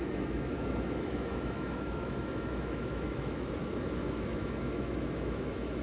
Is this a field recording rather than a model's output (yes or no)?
no